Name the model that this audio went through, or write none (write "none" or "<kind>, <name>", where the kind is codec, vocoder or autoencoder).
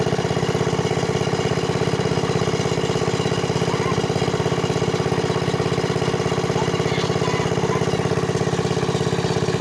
none